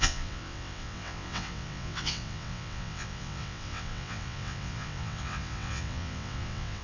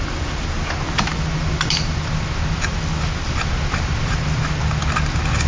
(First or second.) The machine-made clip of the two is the first